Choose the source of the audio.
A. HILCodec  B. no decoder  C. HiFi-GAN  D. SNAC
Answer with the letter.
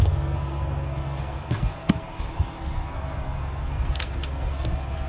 D